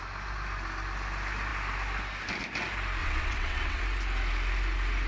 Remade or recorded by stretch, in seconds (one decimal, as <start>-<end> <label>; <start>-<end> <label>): 0.0-3.0 recorded; 3.0-3.8 remade; 3.8-5.1 recorded

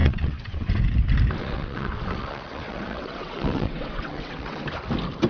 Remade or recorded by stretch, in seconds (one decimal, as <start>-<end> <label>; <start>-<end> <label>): 0.0-0.8 remade; 0.8-1.4 recorded; 1.4-4.6 remade; 4.6-5.3 recorded